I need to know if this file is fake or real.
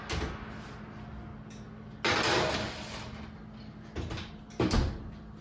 real